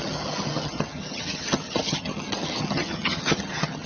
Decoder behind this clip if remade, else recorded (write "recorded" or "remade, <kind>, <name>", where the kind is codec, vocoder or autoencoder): remade, vocoder, HiFi-GAN